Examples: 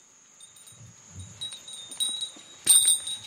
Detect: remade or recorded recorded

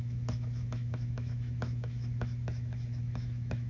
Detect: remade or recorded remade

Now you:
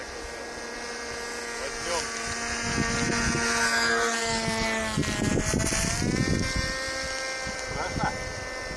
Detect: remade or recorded recorded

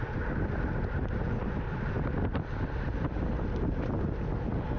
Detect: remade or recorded recorded